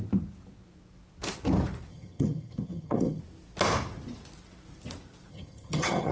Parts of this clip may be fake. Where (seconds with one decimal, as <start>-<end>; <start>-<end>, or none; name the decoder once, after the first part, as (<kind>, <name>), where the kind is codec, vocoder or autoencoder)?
1.9-3.2 (vocoder, HiFi-GAN); 5.3-6.1